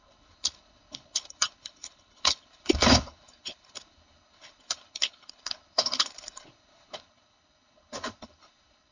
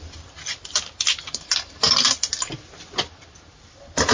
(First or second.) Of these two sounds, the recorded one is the second